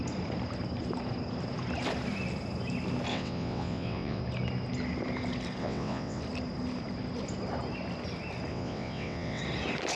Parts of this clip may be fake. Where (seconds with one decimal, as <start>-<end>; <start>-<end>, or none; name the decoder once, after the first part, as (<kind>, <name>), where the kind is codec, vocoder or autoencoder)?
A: 3.1-4.2 (vocoder, WaveNeXt); 5.6-6.2; 8.5-9.4